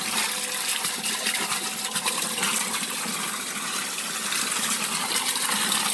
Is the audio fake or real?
real